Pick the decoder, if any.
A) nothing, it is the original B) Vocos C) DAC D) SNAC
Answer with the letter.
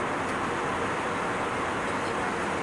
A